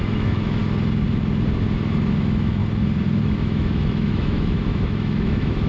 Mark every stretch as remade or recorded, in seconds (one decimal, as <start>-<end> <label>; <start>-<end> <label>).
0.0-0.6 remade; 0.6-2.1 recorded; 2.1-2.6 remade; 2.6-3.2 recorded; 3.2-5.7 remade